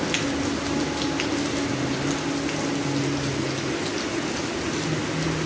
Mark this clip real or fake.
real